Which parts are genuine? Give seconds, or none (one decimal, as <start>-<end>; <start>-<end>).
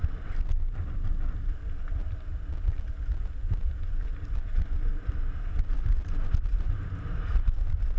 0.0-8.0